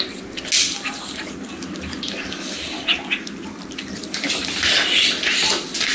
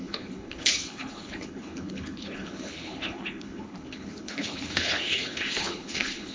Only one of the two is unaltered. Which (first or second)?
first